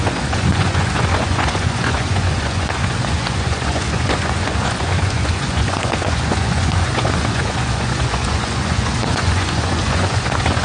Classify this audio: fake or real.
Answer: fake